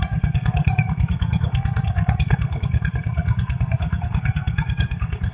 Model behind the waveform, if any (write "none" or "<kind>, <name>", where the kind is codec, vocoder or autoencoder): codec, SNAC